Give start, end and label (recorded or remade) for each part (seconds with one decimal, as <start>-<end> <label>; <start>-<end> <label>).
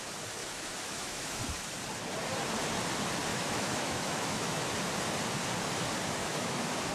0.0-0.4 recorded; 0.4-1.4 remade; 1.4-3.3 recorded; 3.3-4.7 remade; 4.7-6.2 recorded; 6.2-6.9 remade